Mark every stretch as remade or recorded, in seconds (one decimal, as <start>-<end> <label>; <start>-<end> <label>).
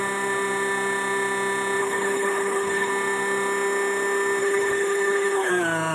0.0-1.8 recorded; 1.8-2.9 remade; 2.9-4.4 recorded; 4.4-5.5 remade; 5.5-5.9 recorded